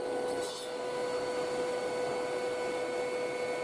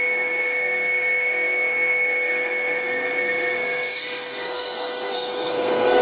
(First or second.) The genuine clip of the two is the first